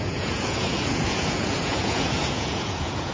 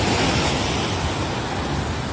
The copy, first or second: first